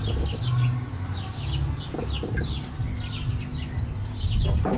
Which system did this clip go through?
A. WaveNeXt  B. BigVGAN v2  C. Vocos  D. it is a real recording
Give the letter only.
D